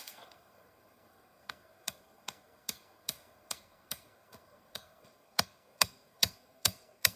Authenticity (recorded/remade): remade